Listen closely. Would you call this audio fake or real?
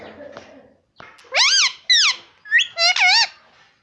real